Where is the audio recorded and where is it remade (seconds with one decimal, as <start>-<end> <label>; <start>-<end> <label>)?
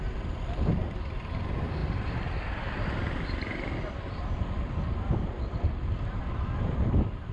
0.0-7.3 remade